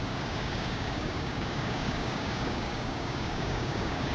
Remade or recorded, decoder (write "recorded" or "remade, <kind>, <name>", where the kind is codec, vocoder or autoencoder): remade, codec, DAC